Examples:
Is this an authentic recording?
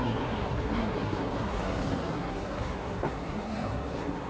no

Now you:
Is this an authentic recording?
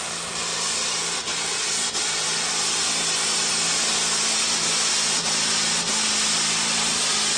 yes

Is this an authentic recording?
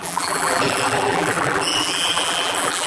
no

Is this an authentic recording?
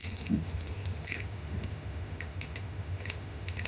no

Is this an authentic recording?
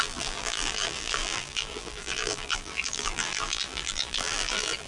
no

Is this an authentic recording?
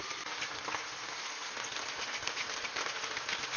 yes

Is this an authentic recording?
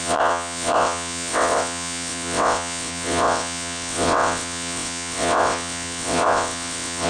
no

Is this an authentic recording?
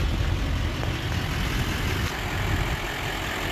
yes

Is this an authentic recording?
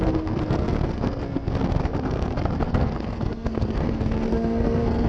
no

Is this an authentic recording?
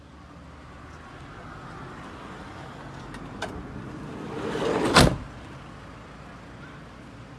yes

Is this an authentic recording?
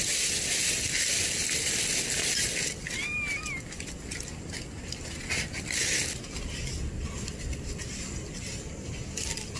yes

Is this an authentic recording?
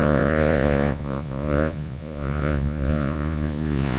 no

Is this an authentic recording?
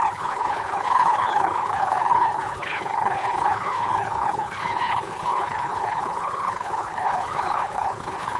no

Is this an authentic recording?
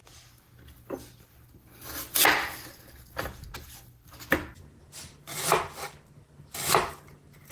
yes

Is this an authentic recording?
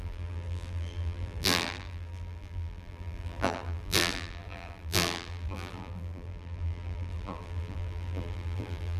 no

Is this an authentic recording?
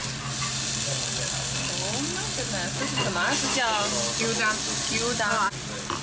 yes